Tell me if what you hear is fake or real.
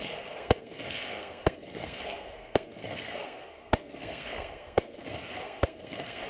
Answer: fake